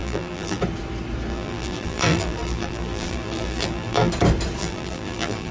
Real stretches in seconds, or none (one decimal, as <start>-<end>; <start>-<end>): 0.6-1.3; 4.1-4.6